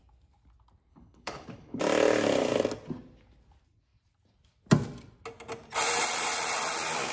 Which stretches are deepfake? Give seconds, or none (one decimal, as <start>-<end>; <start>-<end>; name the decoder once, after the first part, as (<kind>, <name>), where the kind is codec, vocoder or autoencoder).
0.9-1.8 (codec, HILCodec)